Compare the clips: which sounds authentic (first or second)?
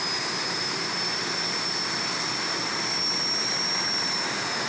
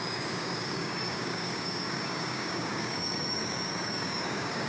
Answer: first